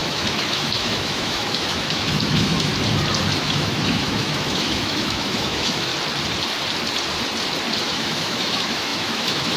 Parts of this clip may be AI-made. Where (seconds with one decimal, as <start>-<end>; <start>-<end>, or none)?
0.0-2.7; 3.4-5.9; 7.8-9.6